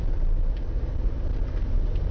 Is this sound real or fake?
real